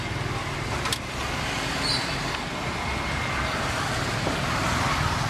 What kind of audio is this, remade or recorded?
recorded